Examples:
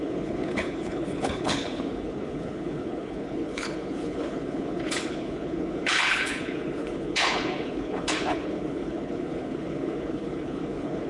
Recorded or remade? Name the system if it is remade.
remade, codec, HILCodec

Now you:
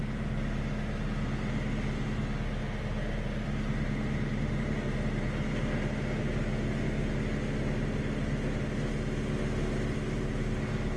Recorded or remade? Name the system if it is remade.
recorded